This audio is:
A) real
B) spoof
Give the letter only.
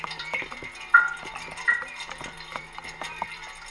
B